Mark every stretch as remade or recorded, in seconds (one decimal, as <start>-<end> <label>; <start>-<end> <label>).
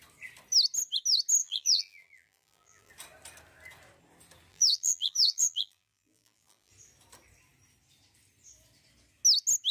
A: 0.0-1.4 recorded; 1.4-2.9 remade; 2.9-4.5 recorded; 4.5-6.7 remade; 6.7-9.7 recorded